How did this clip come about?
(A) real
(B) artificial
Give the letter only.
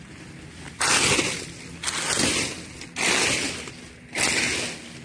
A